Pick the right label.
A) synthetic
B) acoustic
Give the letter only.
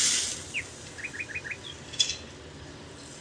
B